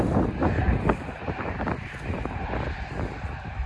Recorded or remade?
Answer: recorded